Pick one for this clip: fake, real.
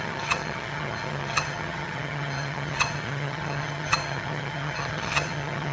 fake